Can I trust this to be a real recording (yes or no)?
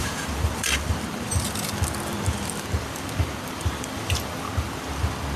no